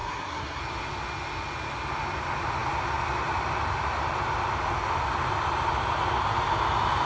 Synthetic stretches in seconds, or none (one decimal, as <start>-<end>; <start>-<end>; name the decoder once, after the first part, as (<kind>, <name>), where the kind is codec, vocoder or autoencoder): 0.0-0.6 (codec, SNAC)